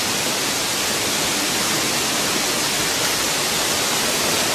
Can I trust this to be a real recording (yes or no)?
yes